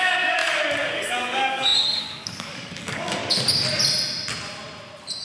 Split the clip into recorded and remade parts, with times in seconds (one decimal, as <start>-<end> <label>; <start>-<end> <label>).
0.0-3.2 remade; 3.2-5.2 recorded